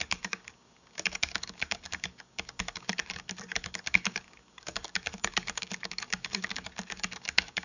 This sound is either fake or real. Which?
fake